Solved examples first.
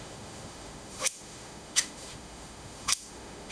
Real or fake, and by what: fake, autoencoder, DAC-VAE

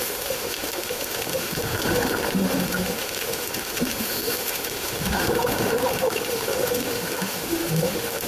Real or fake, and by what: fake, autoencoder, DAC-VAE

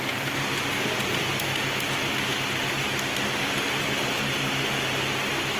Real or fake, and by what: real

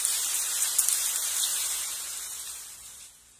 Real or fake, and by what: real